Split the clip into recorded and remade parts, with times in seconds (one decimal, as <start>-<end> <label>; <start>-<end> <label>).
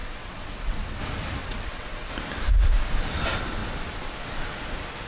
0.0-1.0 remade; 1.0-1.4 recorded; 1.4-2.1 remade; 2.1-5.1 recorded